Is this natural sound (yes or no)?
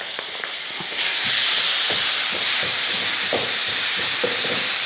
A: no